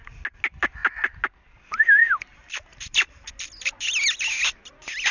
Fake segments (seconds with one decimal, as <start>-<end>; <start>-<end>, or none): none